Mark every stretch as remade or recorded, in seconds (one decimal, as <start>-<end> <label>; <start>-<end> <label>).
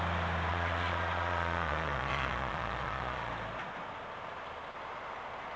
0.0-0.5 recorded; 0.5-3.3 remade; 3.3-5.6 recorded